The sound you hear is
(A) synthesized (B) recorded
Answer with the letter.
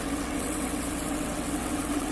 A